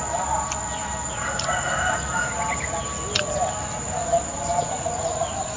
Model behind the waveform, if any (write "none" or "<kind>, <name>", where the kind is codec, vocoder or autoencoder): none